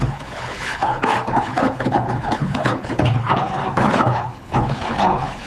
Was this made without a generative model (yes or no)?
no